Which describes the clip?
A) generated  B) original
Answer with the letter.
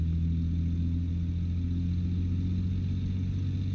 B